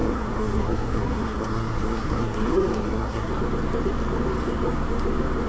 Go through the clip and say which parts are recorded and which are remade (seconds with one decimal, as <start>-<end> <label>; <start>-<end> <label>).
0.0-3.3 remade; 3.3-5.5 recorded